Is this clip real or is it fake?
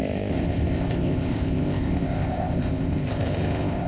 fake